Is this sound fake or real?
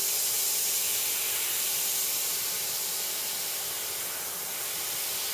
real